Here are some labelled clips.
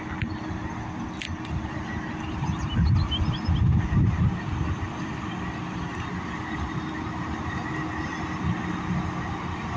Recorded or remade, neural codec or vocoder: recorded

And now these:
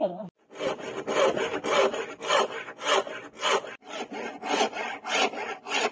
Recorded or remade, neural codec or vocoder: recorded